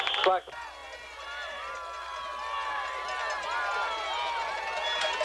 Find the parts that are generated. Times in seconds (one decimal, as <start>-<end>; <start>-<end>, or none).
none